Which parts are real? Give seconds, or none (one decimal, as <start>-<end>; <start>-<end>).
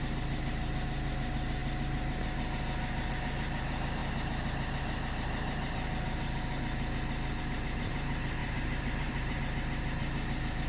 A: 0.0-8.4; 9.4-10.7